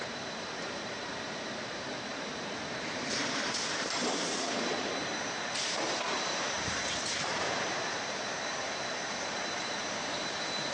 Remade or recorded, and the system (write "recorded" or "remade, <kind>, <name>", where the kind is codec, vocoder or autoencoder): remade, vocoder, BigVGAN v2